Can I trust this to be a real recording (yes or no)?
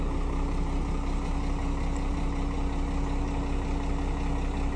yes